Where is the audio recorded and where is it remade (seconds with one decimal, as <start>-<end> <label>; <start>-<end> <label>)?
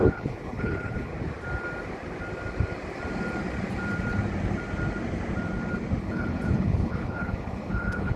0.0-1.1 remade; 1.1-6.0 recorded; 6.0-8.2 remade